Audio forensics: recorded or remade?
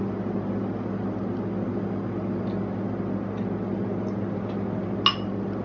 recorded